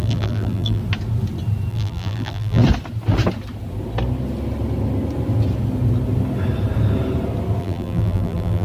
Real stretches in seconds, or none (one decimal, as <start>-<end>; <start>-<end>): 0.8-1.7; 2.6-7.6